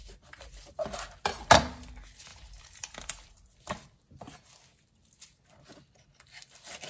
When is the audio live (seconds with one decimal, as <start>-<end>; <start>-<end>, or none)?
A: 0.0-2.3; 3.6-6.9